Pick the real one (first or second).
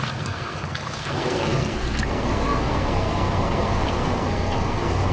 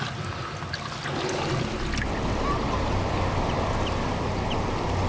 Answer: second